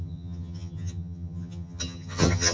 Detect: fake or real fake